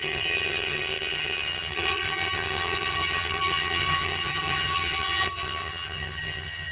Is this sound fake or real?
fake